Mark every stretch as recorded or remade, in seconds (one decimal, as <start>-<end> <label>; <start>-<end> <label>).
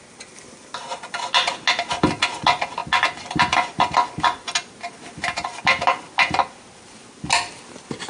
0.0-8.1 recorded